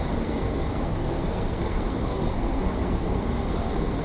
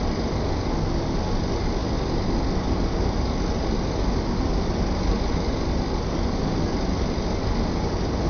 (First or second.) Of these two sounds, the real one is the second